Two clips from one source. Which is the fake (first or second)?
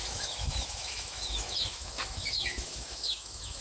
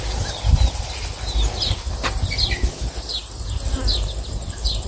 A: first